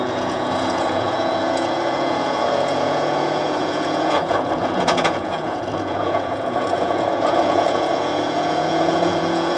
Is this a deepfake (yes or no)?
yes